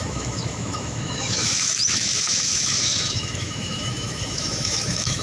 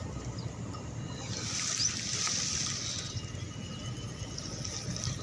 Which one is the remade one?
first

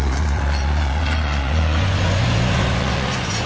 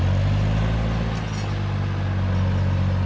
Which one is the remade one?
first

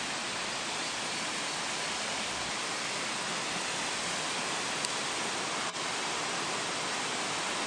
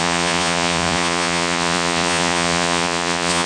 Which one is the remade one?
second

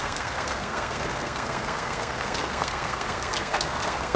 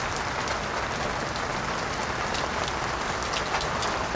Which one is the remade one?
first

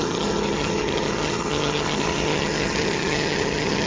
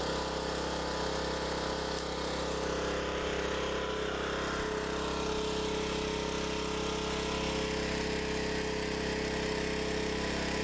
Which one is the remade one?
first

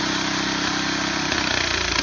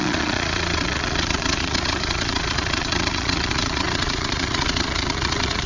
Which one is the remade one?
second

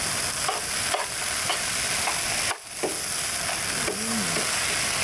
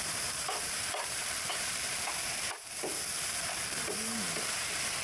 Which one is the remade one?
second